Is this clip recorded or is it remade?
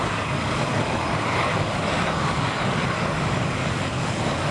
remade